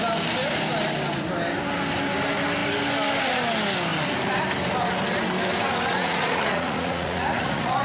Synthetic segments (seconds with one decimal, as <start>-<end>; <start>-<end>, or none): 5.9-7.8